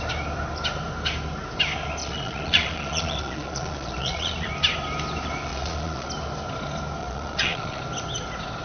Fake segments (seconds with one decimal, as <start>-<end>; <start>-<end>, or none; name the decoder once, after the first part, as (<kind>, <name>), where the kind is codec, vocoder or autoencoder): 2.0-4.5 (vocoder, Vocos); 5.5-6.1; 7.0-7.8